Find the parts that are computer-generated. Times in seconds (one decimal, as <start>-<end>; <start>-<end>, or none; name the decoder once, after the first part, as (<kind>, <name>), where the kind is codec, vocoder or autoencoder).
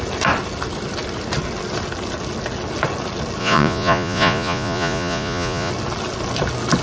3.4-5.7 (vocoder, Vocos)